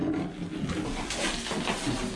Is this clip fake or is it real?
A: real